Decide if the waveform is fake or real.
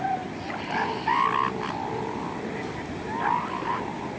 fake